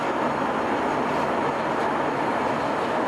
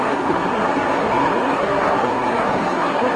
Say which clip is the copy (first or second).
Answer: second